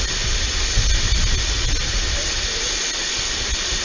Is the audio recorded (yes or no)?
yes